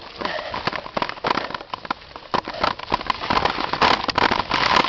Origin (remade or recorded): recorded